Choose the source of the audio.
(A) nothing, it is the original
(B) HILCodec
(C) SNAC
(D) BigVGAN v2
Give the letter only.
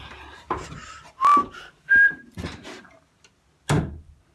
A